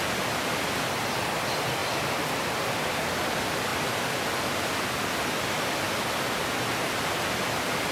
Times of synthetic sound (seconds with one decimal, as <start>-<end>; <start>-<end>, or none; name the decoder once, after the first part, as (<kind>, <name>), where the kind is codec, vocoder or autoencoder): 1.8-3.0 (vocoder, BigVGAN v2)